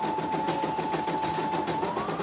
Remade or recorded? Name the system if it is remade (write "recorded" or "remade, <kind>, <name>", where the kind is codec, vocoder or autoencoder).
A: recorded